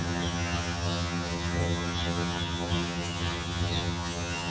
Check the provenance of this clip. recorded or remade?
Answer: remade